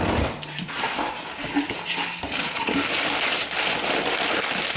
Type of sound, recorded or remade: recorded